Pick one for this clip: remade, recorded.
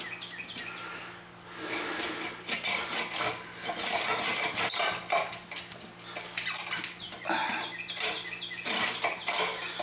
recorded